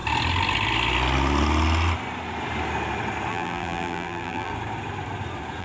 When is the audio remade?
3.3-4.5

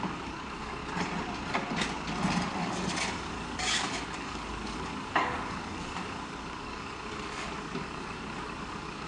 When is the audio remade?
0.0-0.8; 2.6-9.1

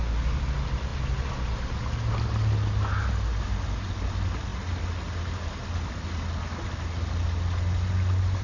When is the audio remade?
none

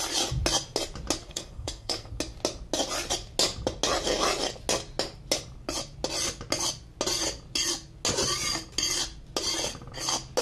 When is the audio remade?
1.2-2.2

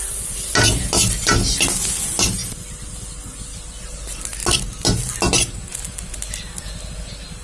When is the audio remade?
none

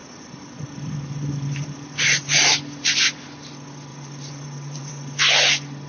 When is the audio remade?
0.0-3.5; 3.9-4.9

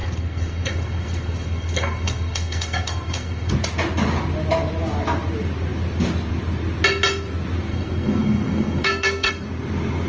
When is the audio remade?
0.0-3.5; 7.7-9.3

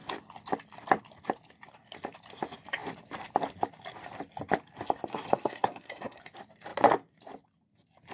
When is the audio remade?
5.1-6.2